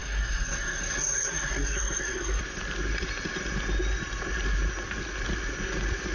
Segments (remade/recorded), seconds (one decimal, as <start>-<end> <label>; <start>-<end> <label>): 0.0-2.4 remade; 2.4-6.1 recorded